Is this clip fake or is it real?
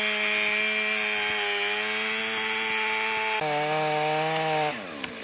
real